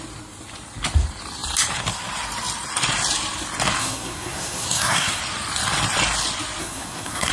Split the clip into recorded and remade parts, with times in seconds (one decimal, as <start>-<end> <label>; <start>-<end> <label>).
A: 0.0-3.8 recorded; 3.8-5.2 remade; 5.2-6.6 recorded; 6.6-7.3 remade